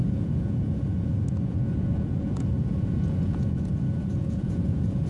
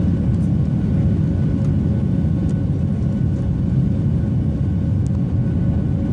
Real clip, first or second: second